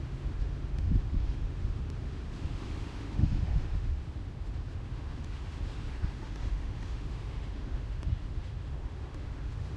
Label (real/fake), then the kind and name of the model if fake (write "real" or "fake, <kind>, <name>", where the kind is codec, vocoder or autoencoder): fake, autoencoder, DAC-VAE